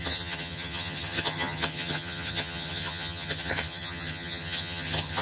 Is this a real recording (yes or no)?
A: no